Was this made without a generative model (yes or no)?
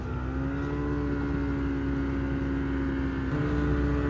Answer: yes